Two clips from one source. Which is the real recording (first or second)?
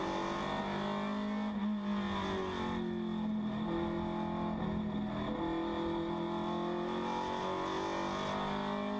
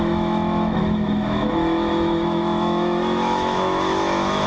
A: first